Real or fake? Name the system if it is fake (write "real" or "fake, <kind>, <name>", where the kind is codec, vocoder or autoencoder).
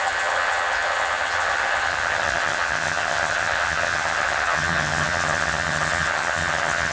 fake, vocoder, HiFi-GAN